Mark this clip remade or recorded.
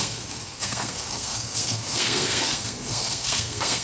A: remade